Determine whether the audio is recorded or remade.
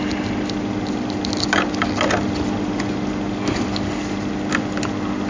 recorded